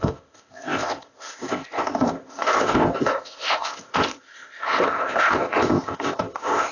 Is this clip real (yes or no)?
no